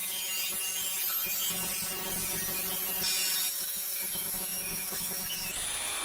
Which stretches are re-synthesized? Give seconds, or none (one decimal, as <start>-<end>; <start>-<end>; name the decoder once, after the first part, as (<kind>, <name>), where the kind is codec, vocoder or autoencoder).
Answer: 3.5-6.0 (autoencoder, DAC-VAE)